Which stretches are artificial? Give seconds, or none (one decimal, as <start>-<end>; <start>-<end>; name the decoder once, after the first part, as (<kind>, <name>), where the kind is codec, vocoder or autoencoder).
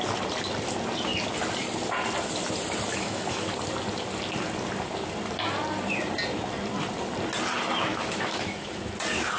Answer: 2.9-3.5 (autoencoder, DAC-VAE); 7.9-8.9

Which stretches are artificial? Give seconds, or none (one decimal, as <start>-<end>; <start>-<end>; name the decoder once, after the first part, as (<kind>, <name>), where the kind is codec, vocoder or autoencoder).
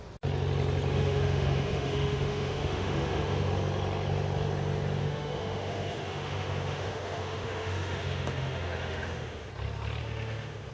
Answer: 0.9-3.5 (autoencoder, DAC-VAE); 5.0-9.5; 10.0-10.7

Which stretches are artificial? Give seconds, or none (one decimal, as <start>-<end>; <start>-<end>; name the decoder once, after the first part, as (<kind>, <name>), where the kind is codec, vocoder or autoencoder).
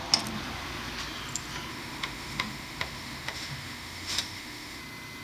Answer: 1.7-4.8 (autoencoder, DAC-VAE)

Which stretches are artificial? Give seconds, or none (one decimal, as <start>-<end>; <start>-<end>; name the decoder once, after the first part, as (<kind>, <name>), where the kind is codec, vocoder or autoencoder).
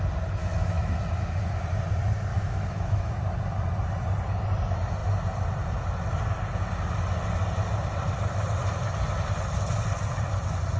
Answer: 0.4-1.0 (autoencoder, DAC-VAE); 2.3-3.1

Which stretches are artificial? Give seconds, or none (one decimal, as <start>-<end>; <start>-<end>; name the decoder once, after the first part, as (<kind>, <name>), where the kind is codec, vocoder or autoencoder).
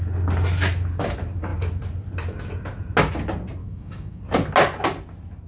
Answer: 3.6-4.2 (autoencoder, DAC-VAE)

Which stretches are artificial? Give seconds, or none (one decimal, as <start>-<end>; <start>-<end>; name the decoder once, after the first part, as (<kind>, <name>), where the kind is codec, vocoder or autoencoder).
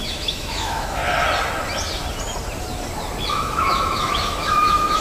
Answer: 0.0-1.0 (autoencoder, DAC-VAE); 3.3-5.0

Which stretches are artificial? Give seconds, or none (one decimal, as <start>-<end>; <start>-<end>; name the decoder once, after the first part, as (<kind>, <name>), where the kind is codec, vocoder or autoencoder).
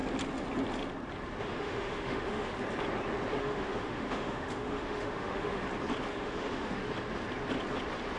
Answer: 1.4-2.5 (autoencoder, DAC-VAE); 3.4-5.6; 6.1-6.8